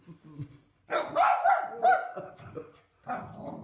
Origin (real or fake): real